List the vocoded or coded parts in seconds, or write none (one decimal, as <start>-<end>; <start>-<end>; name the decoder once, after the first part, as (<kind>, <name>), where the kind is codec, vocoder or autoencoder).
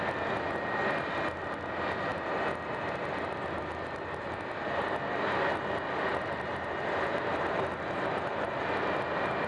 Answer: 6.1-8.7 (vocoder, BigVGAN v2)